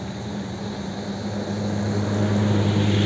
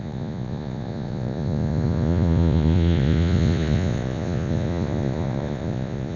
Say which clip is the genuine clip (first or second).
first